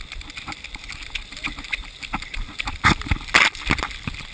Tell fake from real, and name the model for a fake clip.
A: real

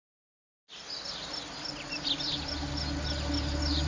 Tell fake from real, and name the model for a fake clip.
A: real